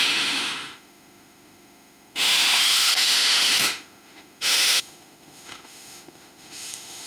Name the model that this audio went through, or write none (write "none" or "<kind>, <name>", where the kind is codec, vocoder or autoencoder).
autoencoder, DAC-VAE